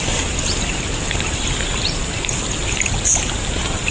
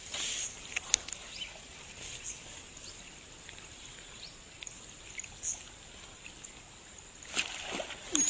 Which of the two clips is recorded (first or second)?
second